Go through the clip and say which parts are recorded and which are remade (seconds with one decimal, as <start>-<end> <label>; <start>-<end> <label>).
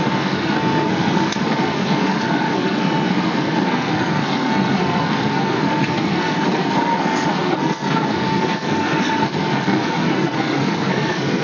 0.0-11.4 remade